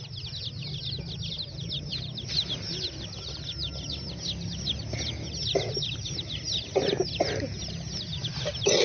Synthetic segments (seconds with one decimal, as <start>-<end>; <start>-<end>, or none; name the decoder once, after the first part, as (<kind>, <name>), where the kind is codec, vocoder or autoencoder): none